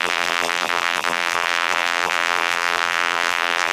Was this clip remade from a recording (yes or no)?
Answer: yes